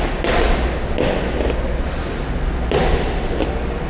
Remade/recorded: recorded